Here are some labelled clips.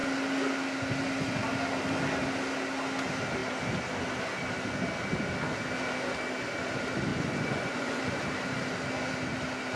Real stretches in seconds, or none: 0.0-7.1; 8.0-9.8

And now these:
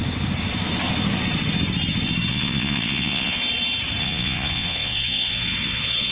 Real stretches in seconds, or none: 0.0-2.3; 3.4-4.0

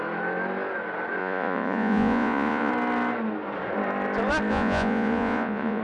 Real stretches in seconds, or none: 0.0-1.2; 2.7-4.5

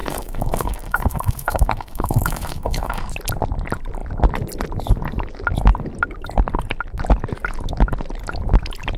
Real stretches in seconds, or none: 3.1-9.0

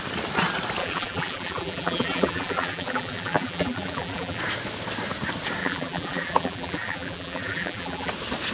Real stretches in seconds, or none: 0.0-0.8; 4.4-5.6; 8.1-8.5

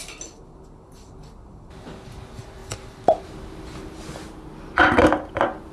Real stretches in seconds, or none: 0.0-5.7

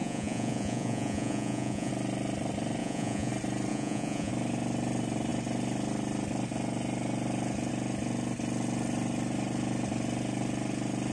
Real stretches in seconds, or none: 1.9-2.8; 3.3-3.7; 4.3-11.1

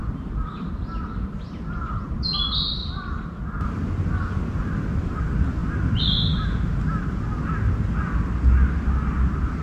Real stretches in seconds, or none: 1.5-2.8; 3.4-9.6